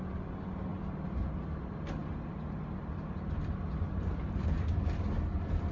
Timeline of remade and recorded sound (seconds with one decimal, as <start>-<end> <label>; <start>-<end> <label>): 0.0-5.7 recorded